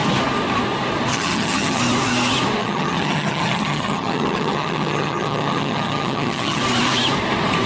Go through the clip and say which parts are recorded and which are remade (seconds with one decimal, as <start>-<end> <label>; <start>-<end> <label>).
0.0-1.1 recorded; 1.1-1.8 remade; 1.8-2.6 recorded; 2.6-6.6 remade; 6.6-7.7 recorded